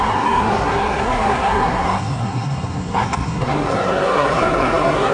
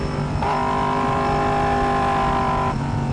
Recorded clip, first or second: second